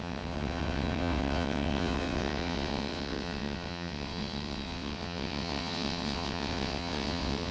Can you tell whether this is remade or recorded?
remade